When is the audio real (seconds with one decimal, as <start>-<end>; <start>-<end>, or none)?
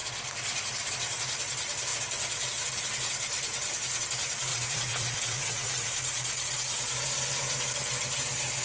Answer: 0.0-4.5; 5.9-8.6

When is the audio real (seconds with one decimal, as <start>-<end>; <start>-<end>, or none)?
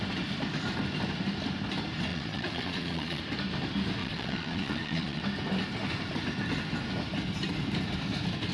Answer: 0.0-2.1; 3.2-4.0; 5.2-8.5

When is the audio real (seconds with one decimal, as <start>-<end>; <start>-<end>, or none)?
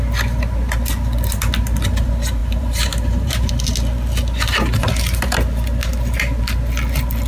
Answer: 0.0-2.4; 3.5-7.3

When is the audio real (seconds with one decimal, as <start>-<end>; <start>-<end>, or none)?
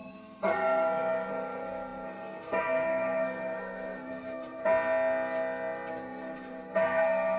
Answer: 4.6-5.9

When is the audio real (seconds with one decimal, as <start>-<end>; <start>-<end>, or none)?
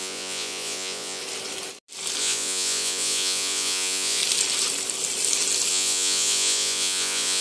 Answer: 1.2-2.2; 4.2-5.7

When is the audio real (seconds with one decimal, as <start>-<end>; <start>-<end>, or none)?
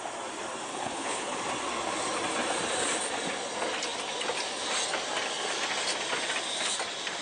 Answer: 0.0-0.7; 1.4-7.2